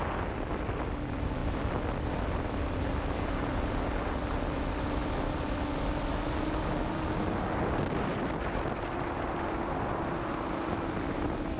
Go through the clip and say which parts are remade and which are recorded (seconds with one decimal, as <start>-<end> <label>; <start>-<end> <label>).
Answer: 0.0-11.6 recorded